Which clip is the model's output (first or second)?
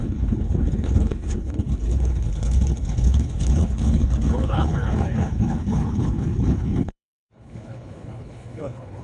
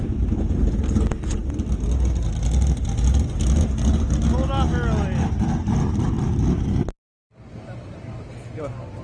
first